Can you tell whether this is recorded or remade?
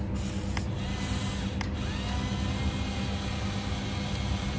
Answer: recorded